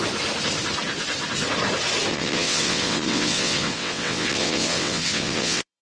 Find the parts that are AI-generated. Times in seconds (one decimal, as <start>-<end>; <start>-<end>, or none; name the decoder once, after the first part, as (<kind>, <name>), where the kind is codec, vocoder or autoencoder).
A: 2.1-5.8 (vocoder, WaveNeXt)